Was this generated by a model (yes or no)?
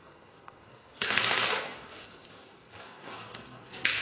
yes